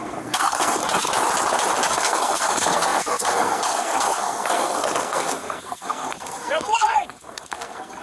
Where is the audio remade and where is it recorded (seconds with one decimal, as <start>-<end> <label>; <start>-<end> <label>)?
0.0-0.8 remade; 0.8-1.9 recorded; 1.9-8.0 remade